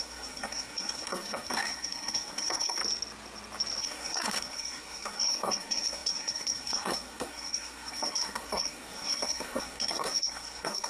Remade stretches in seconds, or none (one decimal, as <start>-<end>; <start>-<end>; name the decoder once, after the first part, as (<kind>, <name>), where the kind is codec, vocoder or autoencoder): 0.0-2.8 (codec, SNAC); 3.8-10.9